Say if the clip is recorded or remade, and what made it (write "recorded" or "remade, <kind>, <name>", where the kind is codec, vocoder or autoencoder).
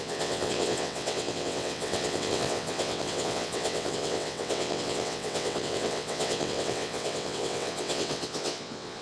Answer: remade, vocoder, WaveNeXt